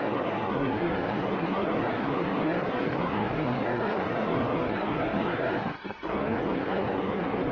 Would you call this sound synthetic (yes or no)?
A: yes